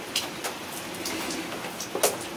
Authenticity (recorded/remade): recorded